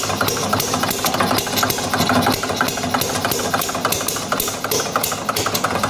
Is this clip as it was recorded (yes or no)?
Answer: yes